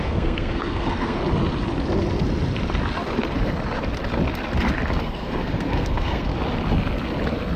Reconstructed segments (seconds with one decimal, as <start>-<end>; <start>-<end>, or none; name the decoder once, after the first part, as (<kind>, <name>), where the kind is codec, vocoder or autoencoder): 0.0-1.2 (codec, SNAC); 5.0-6.3